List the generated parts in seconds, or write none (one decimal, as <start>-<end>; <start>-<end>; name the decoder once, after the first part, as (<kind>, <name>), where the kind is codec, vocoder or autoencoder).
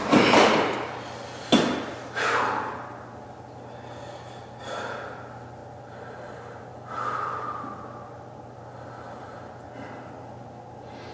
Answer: none